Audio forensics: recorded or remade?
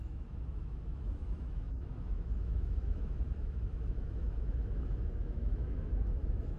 remade